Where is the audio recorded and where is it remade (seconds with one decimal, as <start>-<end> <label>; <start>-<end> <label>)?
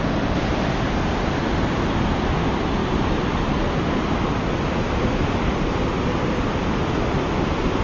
0.0-7.8 recorded